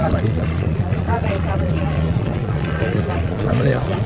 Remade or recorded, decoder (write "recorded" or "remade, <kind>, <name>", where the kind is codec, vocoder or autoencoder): remade, vocoder, Vocos